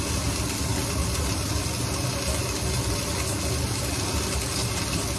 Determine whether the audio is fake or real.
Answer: real